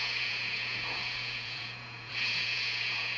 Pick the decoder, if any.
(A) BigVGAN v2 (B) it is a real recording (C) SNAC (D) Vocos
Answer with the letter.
D